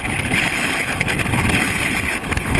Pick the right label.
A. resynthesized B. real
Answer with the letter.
A